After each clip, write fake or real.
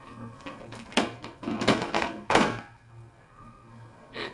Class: fake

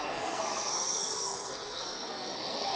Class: fake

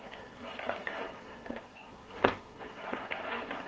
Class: fake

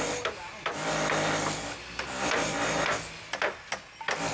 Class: real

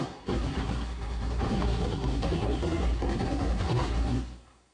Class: fake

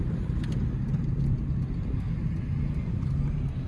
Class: real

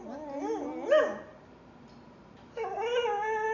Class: real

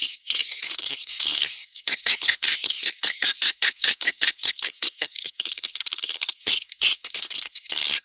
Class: fake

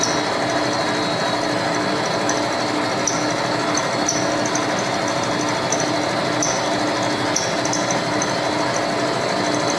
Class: real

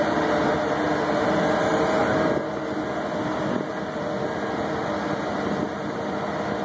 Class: real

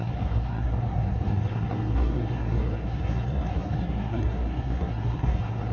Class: fake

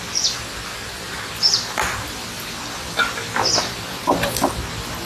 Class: real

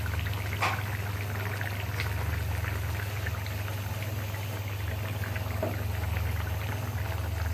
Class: real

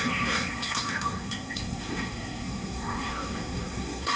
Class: fake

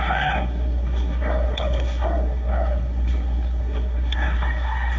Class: fake